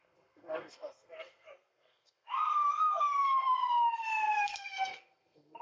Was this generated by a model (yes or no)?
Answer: yes